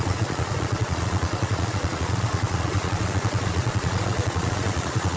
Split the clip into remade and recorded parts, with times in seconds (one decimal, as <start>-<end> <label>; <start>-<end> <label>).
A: 0.0-5.2 remade